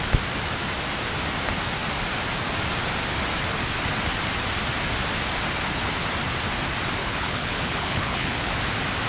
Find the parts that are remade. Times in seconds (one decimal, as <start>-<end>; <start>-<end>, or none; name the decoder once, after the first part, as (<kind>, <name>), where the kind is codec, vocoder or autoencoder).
7.0-8.5 (codec, HILCodec)